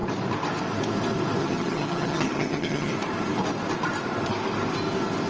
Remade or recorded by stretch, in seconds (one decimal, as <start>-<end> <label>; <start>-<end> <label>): 0.0-1.4 recorded; 1.4-2.9 remade; 2.9-5.3 recorded

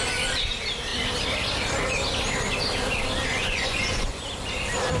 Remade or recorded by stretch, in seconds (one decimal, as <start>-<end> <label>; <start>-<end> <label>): 0.0-3.3 recorded; 3.3-4.2 remade; 4.2-5.0 recorded

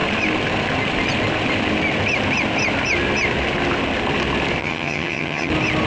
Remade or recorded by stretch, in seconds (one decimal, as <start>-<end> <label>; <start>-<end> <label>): 0.0-4.6 recorded; 4.6-5.5 remade; 5.5-5.9 recorded

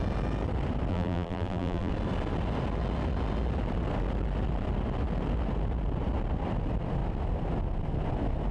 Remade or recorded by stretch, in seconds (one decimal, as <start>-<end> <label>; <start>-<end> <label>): 0.0-0.9 recorded; 0.9-1.9 remade; 1.9-8.5 recorded

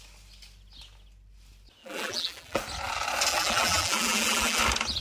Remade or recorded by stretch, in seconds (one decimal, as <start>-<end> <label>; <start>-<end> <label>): 0.0-1.8 recorded; 1.8-2.6 remade; 2.6-3.3 recorded; 3.3-4.6 remade; 4.6-5.0 recorded

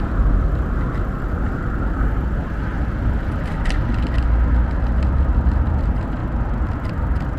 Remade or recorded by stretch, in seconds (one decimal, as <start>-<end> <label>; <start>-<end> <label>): 0.0-7.4 recorded

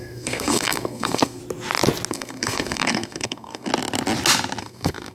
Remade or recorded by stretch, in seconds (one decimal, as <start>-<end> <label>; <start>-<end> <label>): 0.0-1.4 remade; 1.4-2.1 recorded; 2.1-3.7 remade; 3.7-4.6 recorded; 4.6-5.1 remade